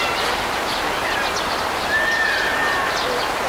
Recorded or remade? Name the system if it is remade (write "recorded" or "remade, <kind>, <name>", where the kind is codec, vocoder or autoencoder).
recorded